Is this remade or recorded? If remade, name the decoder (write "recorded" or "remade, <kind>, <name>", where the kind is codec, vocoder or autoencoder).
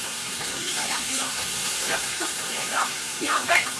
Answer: remade, codec, SNAC